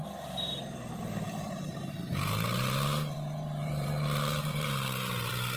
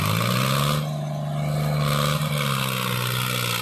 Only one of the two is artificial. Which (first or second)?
first